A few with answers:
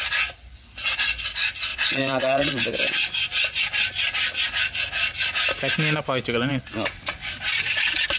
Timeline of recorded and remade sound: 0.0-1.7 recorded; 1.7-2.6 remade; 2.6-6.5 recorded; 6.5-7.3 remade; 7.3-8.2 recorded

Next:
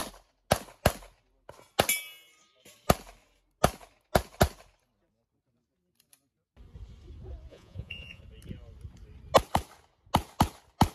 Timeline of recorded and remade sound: 0.0-7.5 recorded; 7.5-8.2 remade; 8.2-10.9 recorded

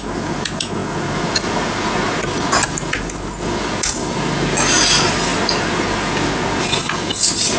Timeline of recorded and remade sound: 0.0-7.6 recorded